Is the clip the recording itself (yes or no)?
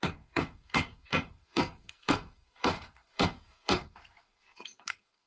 no